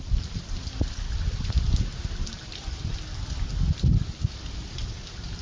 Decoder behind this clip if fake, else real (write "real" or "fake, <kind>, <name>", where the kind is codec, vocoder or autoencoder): fake, vocoder, BigVGAN v2